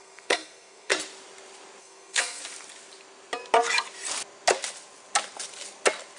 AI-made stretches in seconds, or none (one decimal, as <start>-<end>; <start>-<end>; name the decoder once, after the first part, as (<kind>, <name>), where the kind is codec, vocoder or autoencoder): 0.0-0.9 (codec, SNAC); 1.8-2.4